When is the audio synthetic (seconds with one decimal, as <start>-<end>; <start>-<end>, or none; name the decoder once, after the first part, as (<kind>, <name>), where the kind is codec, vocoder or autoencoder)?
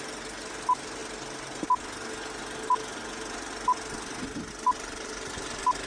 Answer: none